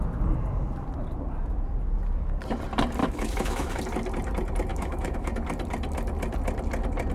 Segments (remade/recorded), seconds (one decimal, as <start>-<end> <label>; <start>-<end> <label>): 0.0-3.0 recorded; 3.0-3.8 remade; 3.8-4.7 recorded; 4.7-5.3 remade; 5.3-7.1 recorded